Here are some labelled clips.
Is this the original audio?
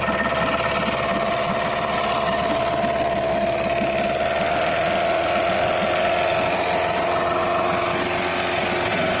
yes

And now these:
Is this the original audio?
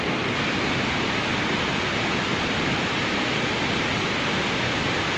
yes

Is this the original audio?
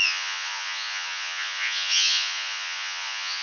no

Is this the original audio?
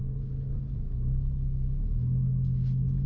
yes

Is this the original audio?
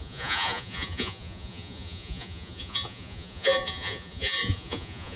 no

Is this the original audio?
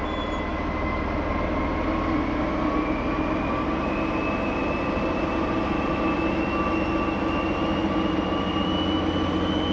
yes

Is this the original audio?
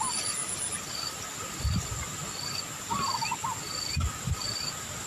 yes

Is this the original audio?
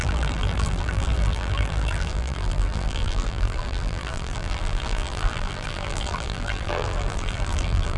no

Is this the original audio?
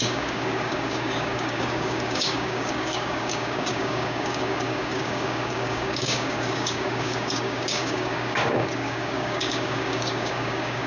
no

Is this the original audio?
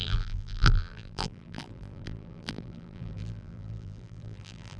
no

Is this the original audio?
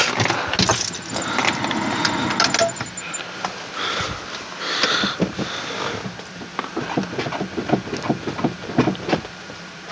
yes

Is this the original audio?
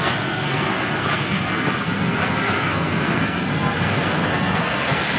no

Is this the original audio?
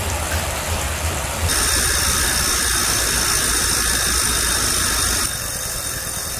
yes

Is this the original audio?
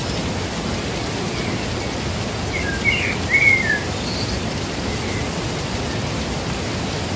yes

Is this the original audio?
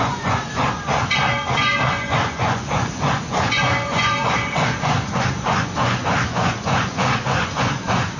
no